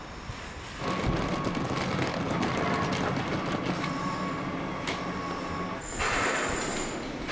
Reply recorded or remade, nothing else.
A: recorded